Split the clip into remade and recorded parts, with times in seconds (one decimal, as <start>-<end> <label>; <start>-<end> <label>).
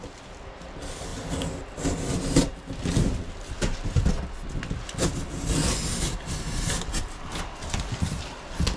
0.0-8.8 recorded